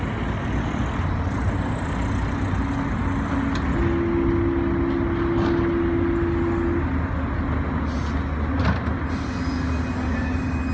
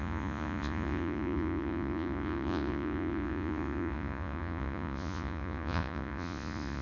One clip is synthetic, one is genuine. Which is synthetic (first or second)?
second